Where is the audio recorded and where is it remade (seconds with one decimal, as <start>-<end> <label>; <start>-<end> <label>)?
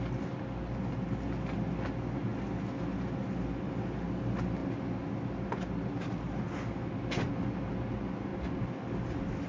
0.0-9.5 recorded